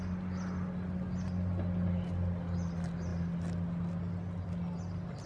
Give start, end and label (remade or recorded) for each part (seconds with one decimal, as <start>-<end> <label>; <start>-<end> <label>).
0.0-5.3 recorded